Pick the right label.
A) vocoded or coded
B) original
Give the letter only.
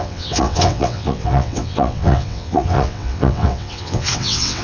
A